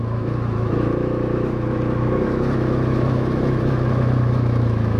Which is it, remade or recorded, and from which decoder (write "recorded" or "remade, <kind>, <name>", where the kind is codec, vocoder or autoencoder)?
remade, autoencoder, DAC-VAE